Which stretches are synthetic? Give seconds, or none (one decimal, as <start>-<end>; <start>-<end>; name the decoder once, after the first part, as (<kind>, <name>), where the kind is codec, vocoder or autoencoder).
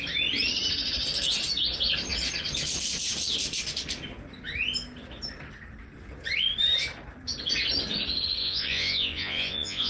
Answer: 8.4-9.9 (vocoder, Vocos)